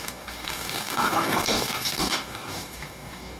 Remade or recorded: remade